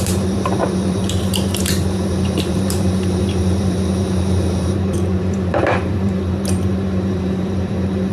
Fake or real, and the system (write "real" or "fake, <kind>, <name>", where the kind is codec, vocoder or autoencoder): fake, vocoder, BigVGAN v2